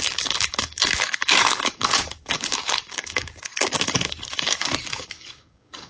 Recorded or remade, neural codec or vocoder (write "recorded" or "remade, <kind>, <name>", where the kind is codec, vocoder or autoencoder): remade, codec, DAC